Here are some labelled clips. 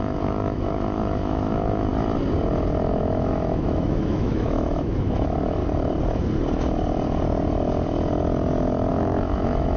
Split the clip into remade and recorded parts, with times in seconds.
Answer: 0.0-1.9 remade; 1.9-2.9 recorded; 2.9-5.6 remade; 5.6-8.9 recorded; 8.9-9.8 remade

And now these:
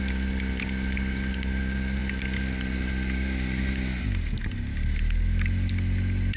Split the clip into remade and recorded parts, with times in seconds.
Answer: 0.0-6.4 recorded

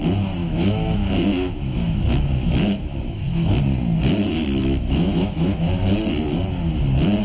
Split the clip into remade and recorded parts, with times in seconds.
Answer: 0.0-0.4 recorded; 0.4-3.6 remade; 3.6-4.6 recorded; 4.6-5.7 remade; 5.7-7.2 recorded

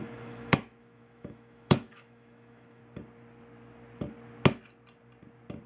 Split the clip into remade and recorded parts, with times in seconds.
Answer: 0.0-2.8 remade; 2.8-5.7 recorded